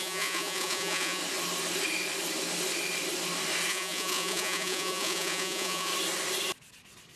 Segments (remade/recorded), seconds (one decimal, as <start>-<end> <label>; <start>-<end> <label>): 0.0-1.2 remade; 1.2-3.7 recorded; 3.7-5.9 remade; 5.9-7.2 recorded